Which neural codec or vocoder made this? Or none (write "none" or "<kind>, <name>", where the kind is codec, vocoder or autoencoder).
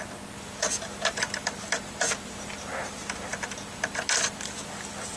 none